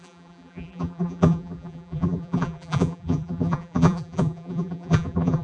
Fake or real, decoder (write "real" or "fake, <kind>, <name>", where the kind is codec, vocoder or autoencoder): fake, vocoder, BigVGAN v2